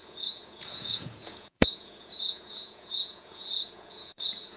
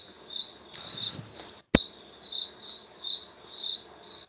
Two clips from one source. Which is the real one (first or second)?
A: second